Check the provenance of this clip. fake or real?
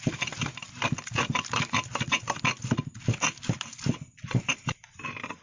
real